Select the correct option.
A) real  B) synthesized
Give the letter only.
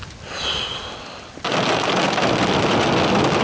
A